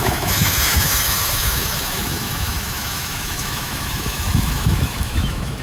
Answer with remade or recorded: remade